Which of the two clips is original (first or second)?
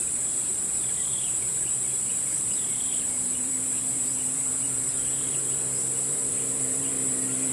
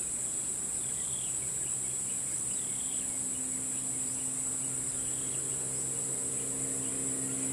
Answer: second